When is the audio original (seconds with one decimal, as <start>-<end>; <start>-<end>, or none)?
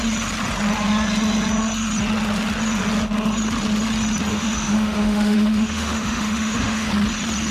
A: 0.0-4.3; 6.9-7.5